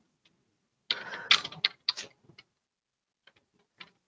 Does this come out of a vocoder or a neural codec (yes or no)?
no